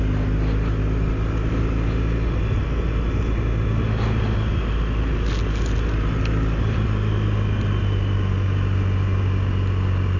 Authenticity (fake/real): real